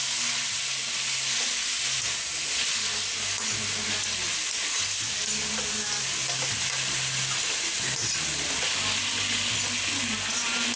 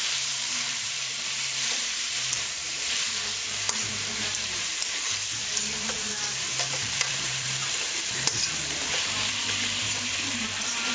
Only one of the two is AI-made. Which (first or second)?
second